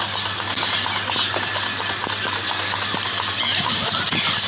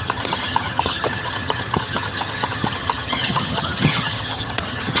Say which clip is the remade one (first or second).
second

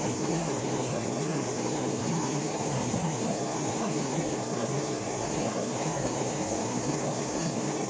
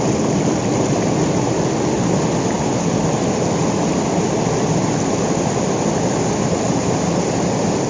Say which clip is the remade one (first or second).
first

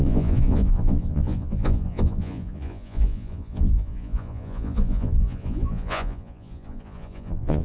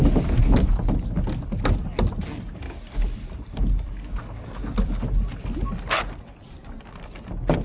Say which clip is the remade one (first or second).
first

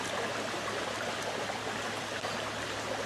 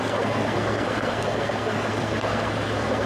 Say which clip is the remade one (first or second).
second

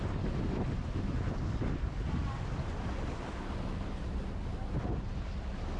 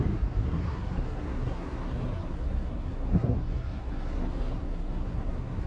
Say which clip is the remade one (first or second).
second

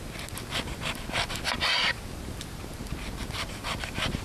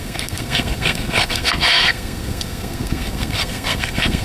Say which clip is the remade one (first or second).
second